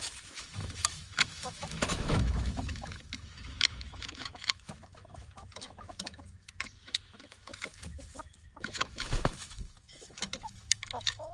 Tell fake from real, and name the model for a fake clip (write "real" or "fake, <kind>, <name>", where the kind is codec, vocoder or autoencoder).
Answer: fake, autoencoder, DAC-VAE